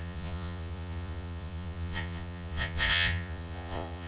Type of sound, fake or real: fake